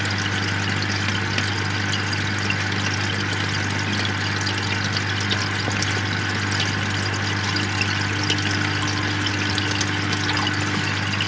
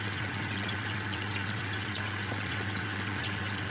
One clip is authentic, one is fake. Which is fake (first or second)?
second